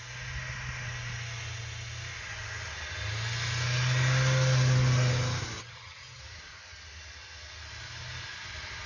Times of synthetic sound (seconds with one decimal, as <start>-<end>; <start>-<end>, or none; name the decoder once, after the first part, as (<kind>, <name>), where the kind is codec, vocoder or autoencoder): 5.6-6.2 (vocoder, HiFi-GAN)

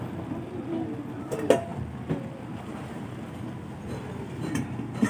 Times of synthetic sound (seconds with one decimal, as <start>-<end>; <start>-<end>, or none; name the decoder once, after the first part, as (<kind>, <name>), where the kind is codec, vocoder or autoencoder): none

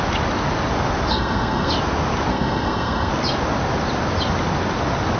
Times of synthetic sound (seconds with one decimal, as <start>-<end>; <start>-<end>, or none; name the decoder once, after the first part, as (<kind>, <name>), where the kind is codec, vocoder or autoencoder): 1.1-1.7 (codec, SNAC); 2.3-3.1

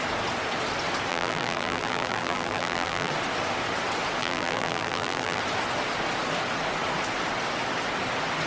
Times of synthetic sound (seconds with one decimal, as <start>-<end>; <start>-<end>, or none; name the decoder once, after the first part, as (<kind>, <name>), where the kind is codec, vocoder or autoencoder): 1.1-3.1 (vocoder, BigVGAN v2); 4.2-5.4

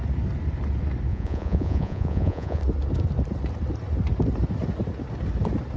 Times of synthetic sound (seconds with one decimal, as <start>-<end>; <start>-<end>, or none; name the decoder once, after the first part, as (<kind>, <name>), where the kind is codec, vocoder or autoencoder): 1.1-2.6 (vocoder, Vocos)

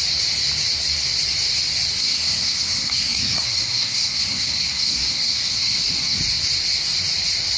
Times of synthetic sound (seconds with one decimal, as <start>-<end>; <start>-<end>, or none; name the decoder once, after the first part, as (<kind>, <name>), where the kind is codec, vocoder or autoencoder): 2.0-6.2 (codec, SNAC)

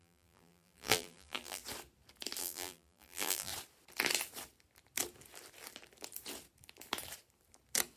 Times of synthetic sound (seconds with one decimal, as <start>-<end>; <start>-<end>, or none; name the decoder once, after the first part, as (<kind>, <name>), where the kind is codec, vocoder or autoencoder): 0.0-1.6 (vocoder, BigVGAN v2); 2.4-3.5

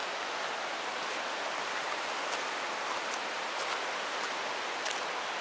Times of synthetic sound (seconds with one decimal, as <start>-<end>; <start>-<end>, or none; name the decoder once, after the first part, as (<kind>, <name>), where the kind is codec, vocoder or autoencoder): none